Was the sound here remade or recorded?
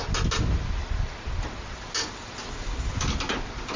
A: recorded